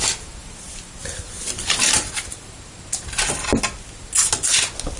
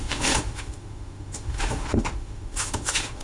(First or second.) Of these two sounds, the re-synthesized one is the second